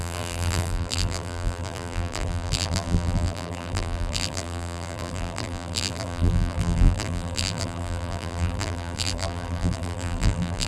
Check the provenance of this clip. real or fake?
fake